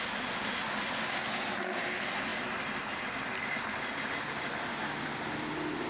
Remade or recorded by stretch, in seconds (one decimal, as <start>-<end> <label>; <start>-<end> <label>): 0.0-5.9 recorded